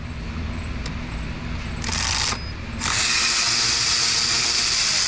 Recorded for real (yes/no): yes